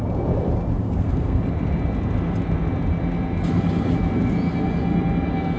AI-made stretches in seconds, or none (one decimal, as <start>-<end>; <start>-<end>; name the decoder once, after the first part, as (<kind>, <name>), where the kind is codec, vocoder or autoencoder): 0.8-1.4 (codec, SNAC)